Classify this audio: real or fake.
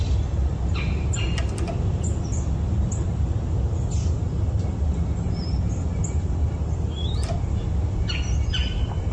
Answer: real